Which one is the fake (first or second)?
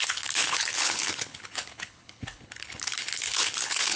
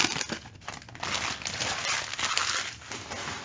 first